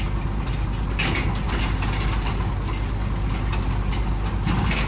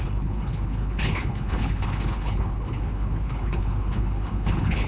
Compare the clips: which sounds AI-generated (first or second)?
second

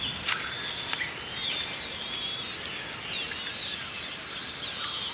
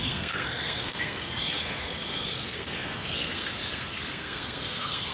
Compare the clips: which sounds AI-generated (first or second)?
second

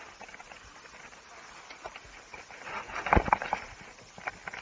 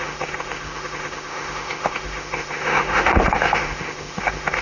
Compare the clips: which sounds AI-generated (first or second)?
second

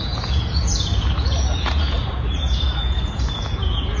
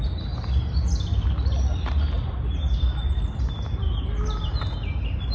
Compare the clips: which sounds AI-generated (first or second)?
first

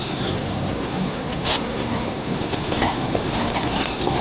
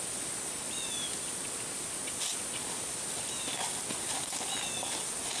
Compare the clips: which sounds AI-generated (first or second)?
first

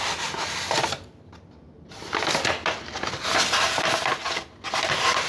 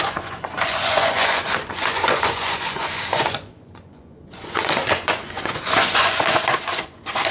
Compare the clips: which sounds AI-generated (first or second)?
second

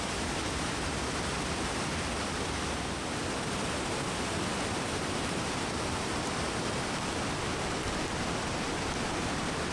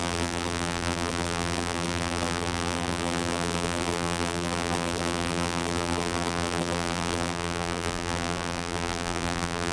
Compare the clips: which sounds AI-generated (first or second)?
second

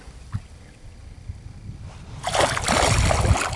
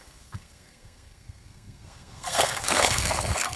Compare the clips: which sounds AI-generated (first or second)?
second